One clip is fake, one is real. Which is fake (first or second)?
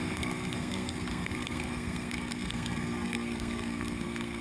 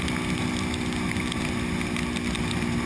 first